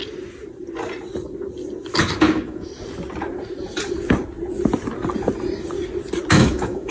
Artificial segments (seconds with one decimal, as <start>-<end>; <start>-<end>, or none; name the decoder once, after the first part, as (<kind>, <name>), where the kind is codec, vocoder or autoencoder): 2.0-2.7 (autoencoder, DAC-VAE); 6.3-6.9

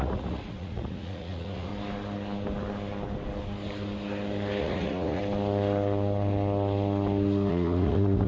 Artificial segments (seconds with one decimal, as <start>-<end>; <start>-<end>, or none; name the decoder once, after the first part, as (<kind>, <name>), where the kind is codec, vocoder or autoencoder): 0.0-1.7 (vocoder, Vocos); 4.6-5.2; 7.5-8.3

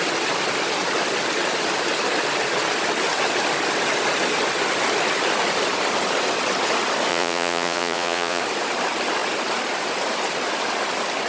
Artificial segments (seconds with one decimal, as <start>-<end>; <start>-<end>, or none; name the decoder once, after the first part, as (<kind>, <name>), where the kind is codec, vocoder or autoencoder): 7.1-8.4 (vocoder, Vocos)